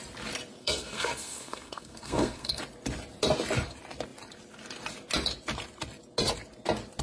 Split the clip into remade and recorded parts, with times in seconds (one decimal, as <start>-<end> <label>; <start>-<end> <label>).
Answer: 0.0-0.6 recorded; 0.6-2.6 remade; 2.6-7.0 recorded